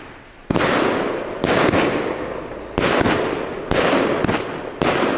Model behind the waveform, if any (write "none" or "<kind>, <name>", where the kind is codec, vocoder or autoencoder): none